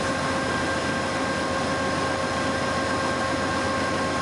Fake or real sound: real